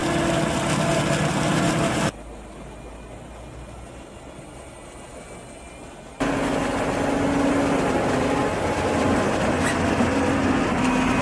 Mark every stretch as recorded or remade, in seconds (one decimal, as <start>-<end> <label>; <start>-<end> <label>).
0.0-11.2 recorded